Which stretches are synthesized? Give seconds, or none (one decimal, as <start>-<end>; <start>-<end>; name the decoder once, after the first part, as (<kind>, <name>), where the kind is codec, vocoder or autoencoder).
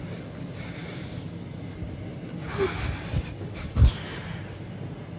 none